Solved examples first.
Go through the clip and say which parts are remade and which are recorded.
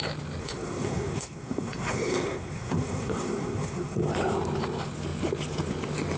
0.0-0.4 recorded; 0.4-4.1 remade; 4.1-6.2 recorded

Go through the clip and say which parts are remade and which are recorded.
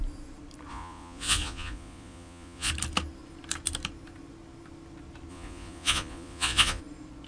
0.0-0.7 recorded; 0.7-2.7 remade; 2.7-5.3 recorded; 5.3-6.8 remade; 6.8-7.3 recorded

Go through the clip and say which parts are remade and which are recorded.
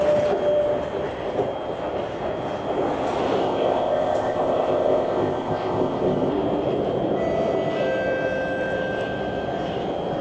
0.0-3.4 recorded; 3.4-6.3 remade; 6.3-10.2 recorded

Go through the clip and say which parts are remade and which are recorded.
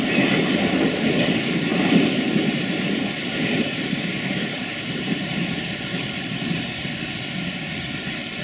0.0-1.7 recorded; 1.7-6.6 remade; 6.6-8.4 recorded